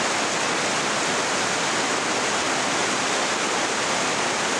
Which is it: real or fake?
real